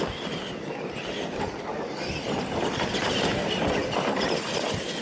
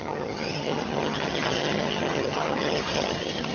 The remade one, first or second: second